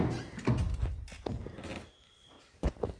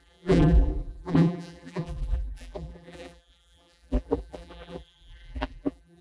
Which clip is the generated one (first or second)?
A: second